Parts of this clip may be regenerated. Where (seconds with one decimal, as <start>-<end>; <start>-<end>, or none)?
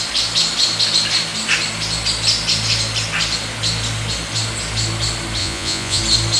5.4-6.0